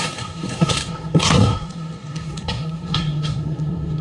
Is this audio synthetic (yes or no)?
yes